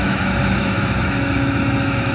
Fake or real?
fake